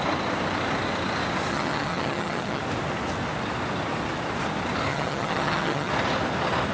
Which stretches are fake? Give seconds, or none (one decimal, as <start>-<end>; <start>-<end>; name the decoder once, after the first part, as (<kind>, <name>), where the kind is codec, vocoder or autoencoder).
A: 1.5-2.6 (vocoder, HiFi-GAN); 4.9-5.9